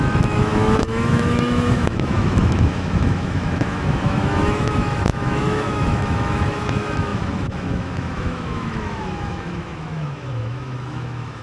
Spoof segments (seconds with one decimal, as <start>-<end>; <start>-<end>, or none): 0.0-11.4